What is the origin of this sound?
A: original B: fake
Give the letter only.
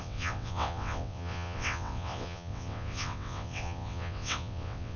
B